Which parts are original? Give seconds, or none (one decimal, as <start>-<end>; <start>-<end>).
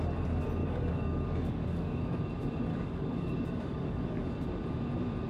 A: 0.0-0.6; 2.2-2.7; 4.3-5.3